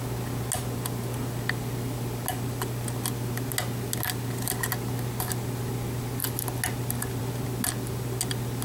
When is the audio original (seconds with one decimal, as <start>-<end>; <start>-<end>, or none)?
0.0-8.6